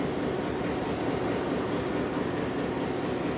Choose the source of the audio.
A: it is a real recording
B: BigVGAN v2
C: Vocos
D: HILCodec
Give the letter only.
A